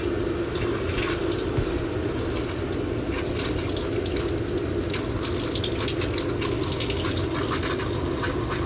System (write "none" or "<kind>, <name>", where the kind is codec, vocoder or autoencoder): none